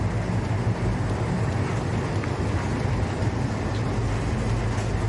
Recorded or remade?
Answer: recorded